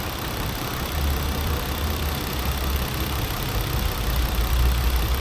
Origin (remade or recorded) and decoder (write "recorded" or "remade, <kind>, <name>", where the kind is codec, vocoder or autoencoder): remade, vocoder, BigVGAN v2